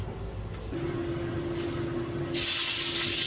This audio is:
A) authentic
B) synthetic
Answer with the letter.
A